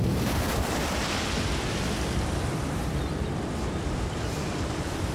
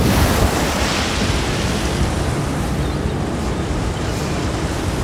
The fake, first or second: first